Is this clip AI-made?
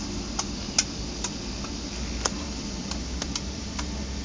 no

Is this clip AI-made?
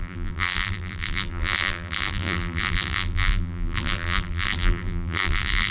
yes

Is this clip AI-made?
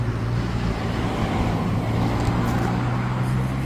no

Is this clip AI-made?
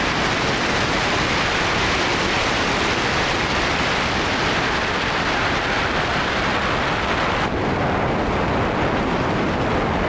no